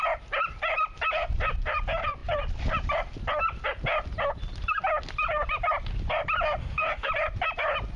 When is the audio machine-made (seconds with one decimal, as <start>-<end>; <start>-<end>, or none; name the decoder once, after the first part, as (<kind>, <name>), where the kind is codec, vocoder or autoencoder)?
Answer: 6.6-7.1 (autoencoder, DAC-VAE)